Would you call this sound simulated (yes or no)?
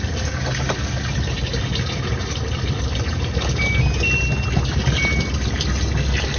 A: no